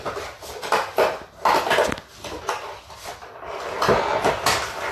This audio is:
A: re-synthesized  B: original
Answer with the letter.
B